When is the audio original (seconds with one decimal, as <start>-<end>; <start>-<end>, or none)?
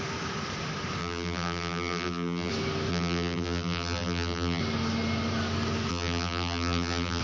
0.0-1.0; 2.5-2.9; 4.6-5.9